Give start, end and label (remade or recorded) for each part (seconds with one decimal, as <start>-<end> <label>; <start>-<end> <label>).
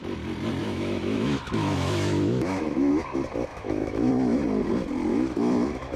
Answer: 0.0-0.6 recorded; 0.6-2.9 remade; 2.9-3.5 recorded; 3.5-4.1 remade; 4.1-5.1 recorded; 5.1-6.0 remade